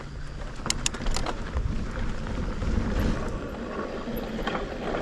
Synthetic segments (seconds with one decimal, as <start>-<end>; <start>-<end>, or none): none